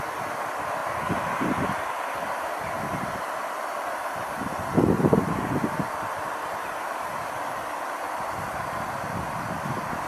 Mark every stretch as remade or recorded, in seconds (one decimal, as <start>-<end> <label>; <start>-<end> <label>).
0.0-10.1 recorded